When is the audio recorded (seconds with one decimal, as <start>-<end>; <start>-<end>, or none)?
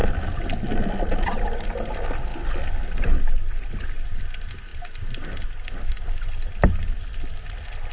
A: 0.0-7.9